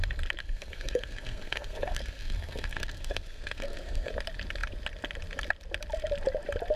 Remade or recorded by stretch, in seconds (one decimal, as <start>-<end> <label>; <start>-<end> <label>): 0.0-0.4 recorded; 0.4-4.1 remade; 4.1-6.8 recorded